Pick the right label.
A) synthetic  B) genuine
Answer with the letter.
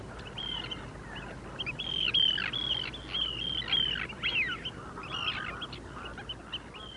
B